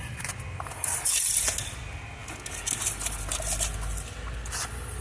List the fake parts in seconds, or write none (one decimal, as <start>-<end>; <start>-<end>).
none

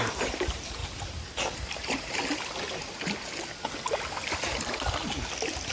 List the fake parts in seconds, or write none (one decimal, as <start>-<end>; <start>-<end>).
0.0-0.8; 1.6-2.2

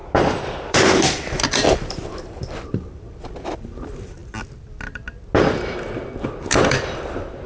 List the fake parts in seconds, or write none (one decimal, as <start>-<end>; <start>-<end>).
0.0-4.2; 6.6-7.5

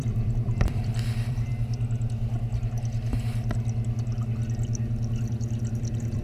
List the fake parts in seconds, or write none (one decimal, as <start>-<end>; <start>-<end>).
0.0-1.5; 5.2-6.2

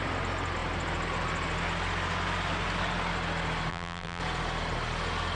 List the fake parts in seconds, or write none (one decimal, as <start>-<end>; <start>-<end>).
3.7-4.2